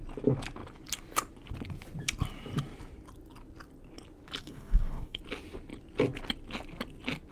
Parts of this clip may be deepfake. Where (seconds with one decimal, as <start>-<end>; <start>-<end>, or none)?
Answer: 4.4-5.2